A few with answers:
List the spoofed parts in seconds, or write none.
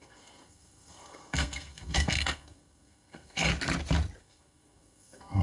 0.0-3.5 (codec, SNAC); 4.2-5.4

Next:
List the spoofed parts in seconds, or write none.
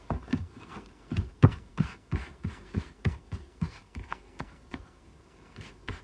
0.0-6.0 (codec, SNAC)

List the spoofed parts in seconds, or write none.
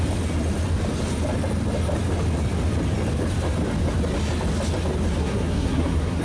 5.2-6.2 (codec, SNAC)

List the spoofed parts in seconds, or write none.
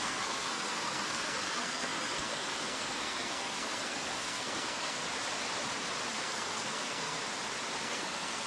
0.0-5.0 (codec, SNAC); 6.1-7.2; 7.8-8.5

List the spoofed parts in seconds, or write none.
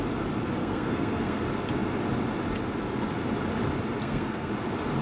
0.6-1.4 (codec, SNAC); 4.0-4.5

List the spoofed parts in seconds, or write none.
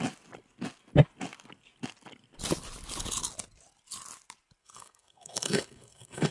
4.6-6.3 (codec, SNAC)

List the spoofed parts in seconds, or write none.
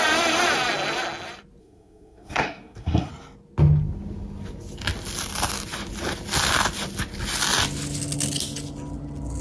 1.6-3.1 (codec, SNAC)